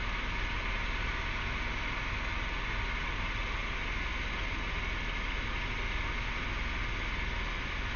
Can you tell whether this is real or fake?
real